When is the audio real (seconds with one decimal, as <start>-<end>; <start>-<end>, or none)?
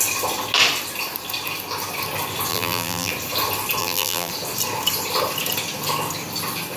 0.0-2.5; 3.1-3.8; 4.3-6.8